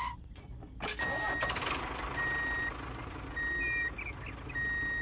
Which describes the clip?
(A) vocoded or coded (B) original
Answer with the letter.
B